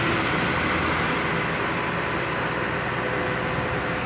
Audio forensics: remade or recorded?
recorded